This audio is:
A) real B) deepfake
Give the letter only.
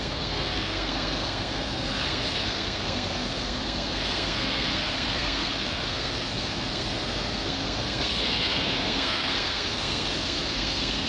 B